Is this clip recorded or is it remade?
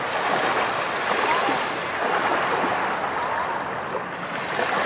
recorded